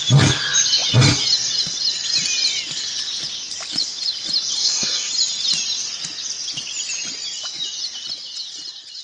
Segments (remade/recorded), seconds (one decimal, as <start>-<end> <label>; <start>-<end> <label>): 0.0-4.6 recorded; 4.6-5.1 remade; 5.1-9.0 recorded